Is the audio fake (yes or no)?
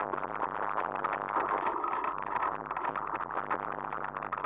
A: no